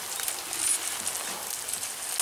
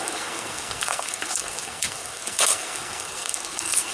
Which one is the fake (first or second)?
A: second